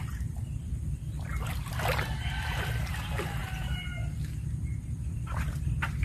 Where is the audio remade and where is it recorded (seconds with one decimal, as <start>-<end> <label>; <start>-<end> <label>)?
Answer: 0.0-3.4 remade; 3.4-4.8 recorded; 4.8-6.0 remade